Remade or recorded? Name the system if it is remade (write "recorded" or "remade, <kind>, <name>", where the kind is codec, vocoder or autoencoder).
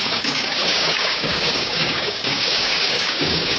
remade, codec, DAC